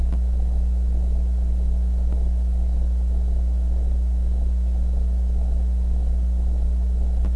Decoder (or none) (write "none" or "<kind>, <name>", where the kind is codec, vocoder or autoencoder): none